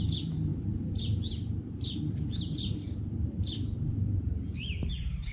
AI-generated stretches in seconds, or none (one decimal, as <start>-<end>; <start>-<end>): 0.0-5.3